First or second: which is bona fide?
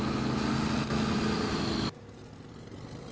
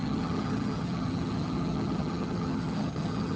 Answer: first